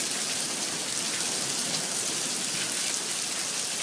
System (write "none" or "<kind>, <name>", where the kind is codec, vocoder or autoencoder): none